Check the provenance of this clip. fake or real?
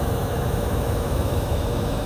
fake